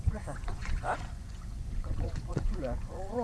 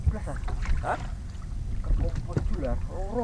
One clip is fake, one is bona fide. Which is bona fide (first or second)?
second